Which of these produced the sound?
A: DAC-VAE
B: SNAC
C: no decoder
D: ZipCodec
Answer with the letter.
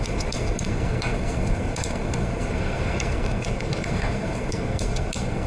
B